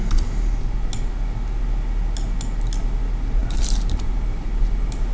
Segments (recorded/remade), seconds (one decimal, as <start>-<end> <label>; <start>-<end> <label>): 0.0-3.4 recorded; 3.4-4.4 remade; 4.4-5.1 recorded

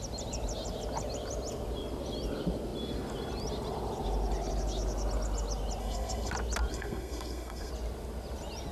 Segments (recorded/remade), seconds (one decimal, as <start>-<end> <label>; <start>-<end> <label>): 0.0-5.8 recorded; 5.8-6.3 remade; 6.3-6.7 recorded; 6.7-7.7 remade; 7.7-8.7 recorded

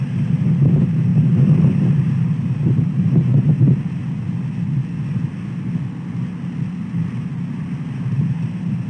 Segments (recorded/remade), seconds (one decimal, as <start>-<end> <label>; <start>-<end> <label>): 0.0-4.0 remade; 4.0-8.2 recorded; 8.2-8.9 remade

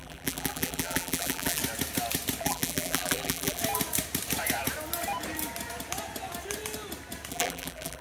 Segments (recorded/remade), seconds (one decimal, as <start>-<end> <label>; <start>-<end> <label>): 0.0-1.6 remade; 1.6-2.4 recorded; 2.4-3.6 remade; 3.6-7.3 recorded; 7.3-8.0 remade

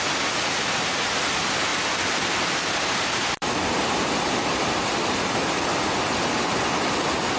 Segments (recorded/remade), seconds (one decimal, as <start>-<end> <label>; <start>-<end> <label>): 0.0-1.7 recorded; 1.7-6.0 remade; 6.0-7.4 recorded

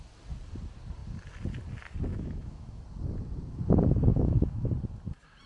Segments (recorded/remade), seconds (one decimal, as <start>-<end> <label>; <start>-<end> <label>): 0.0-2.1 recorded; 2.1-2.8 remade; 2.8-4.1 recorded; 4.1-4.7 remade; 4.7-5.5 recorded